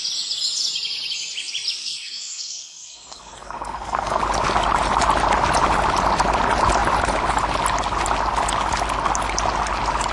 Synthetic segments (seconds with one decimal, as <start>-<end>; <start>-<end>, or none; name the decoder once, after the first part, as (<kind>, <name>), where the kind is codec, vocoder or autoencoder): 1.8-4.2 (codec, SNAC)